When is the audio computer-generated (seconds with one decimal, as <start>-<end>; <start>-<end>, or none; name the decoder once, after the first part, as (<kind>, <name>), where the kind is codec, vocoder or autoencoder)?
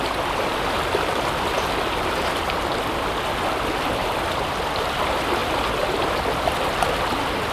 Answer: 0.0-5.4 (vocoder, BigVGAN v2); 6.8-7.5